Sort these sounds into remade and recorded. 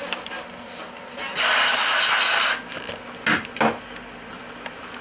recorded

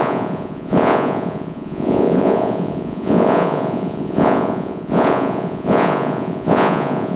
remade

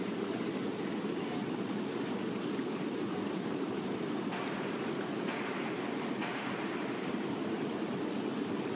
recorded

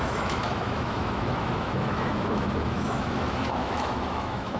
remade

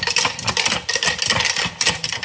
recorded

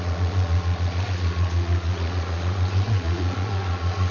remade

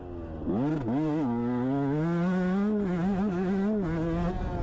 recorded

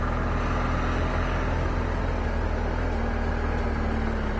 recorded